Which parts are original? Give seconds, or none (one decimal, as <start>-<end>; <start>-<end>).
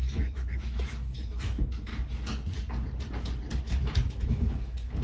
1.9-3.6